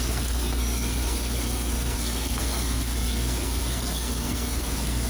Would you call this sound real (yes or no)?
no